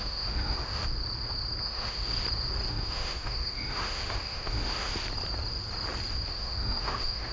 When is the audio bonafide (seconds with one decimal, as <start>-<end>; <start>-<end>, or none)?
0.8-1.6; 2.1-2.7; 4.9-6.3